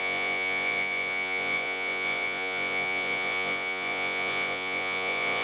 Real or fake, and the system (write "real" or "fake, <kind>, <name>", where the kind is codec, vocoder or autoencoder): fake, vocoder, Vocos